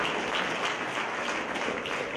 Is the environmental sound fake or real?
real